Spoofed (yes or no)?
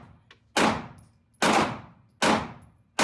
no